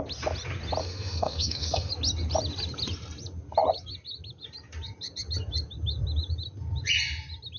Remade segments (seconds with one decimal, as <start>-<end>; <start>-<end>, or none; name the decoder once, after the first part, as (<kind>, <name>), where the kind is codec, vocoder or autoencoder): 0.8-1.9 (autoencoder, DAC-VAE)